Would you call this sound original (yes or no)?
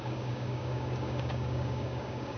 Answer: no